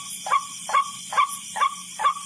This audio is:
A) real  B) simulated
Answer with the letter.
A